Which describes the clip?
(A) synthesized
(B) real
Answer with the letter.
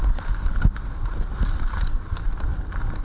A